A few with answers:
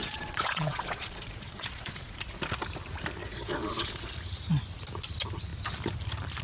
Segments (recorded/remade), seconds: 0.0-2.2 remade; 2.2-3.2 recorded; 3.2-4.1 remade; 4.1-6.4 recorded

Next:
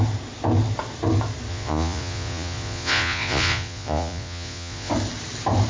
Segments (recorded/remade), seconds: 0.0-1.5 recorded; 1.5-4.9 remade; 4.9-5.7 recorded